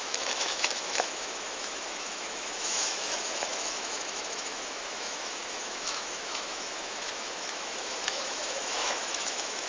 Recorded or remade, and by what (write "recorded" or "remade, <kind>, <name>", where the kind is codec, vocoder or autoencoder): remade, autoencoder, DAC-VAE